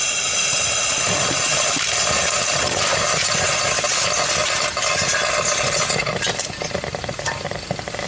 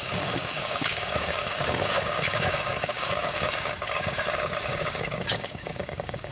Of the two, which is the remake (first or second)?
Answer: second